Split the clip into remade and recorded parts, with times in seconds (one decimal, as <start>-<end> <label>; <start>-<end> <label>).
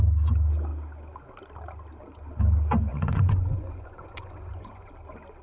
0.0-2.9 recorded; 2.9-4.9 remade; 4.9-5.4 recorded